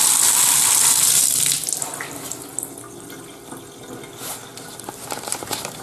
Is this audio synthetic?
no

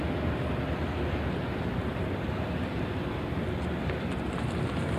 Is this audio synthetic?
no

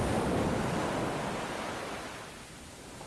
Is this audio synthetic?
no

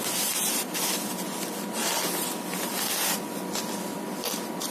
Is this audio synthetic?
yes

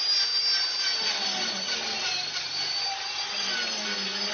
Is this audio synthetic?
no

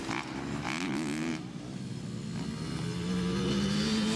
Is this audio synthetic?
no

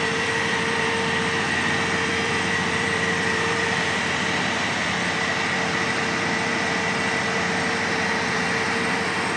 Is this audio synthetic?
yes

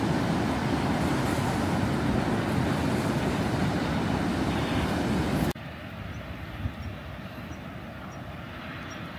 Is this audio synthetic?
no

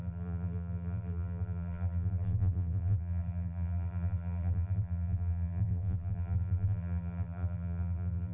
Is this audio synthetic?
yes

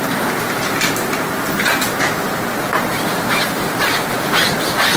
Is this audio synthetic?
yes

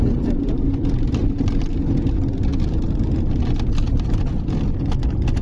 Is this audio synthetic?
no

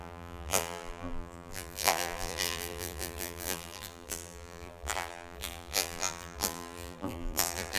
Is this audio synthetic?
yes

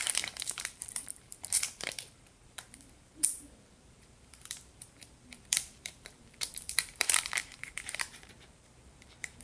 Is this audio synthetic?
yes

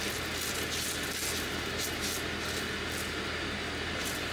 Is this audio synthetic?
no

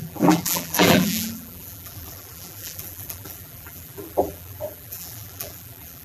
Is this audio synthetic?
yes